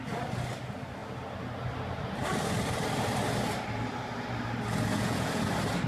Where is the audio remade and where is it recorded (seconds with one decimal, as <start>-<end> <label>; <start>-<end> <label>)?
0.0-4.9 recorded; 4.9-5.5 remade; 5.5-5.9 recorded